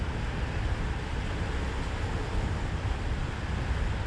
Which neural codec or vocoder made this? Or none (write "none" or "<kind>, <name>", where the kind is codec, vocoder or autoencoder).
none